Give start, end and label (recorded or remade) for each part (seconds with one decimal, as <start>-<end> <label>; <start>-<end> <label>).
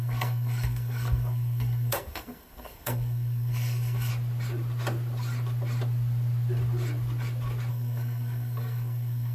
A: 0.0-4.1 remade; 4.1-7.7 recorded; 7.7-9.3 remade